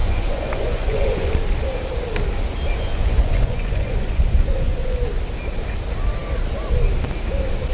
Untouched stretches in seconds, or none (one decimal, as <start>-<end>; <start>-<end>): 1.3-2.9; 5.0-7.7